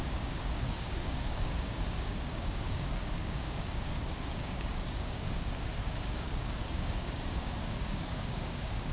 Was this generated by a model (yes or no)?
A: yes